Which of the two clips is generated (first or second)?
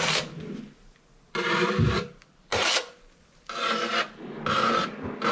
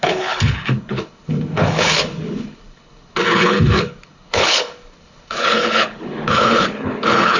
second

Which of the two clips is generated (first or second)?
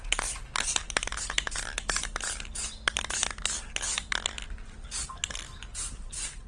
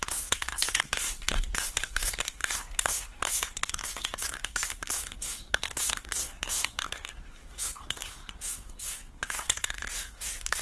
second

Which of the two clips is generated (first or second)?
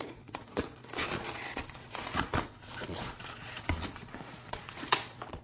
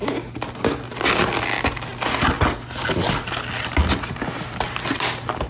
first